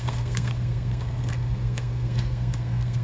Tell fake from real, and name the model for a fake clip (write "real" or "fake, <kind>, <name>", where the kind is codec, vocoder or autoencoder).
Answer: fake, codec, SNAC